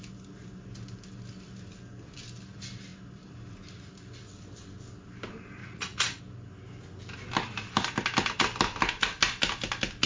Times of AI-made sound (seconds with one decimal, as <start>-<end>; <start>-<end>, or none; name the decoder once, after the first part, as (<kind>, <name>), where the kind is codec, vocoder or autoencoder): 5.6-6.2 (vocoder, Vocos)